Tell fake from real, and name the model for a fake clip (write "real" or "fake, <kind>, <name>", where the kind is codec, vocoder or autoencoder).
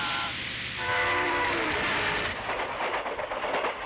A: fake, vocoder, BigVGAN v2